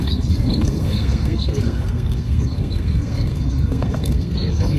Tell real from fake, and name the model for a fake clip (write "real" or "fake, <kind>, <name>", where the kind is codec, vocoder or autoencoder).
fake, codec, SNAC